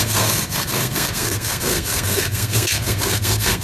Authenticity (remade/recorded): remade